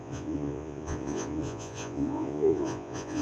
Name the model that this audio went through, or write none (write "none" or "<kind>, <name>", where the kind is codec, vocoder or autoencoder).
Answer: vocoder, Vocos